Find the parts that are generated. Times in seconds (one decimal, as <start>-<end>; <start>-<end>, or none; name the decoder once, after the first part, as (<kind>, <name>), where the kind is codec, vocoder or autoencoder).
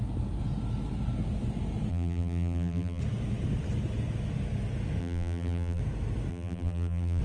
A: 1.9-3.0 (vocoder, BigVGAN v2); 5.0-5.8; 6.3-7.2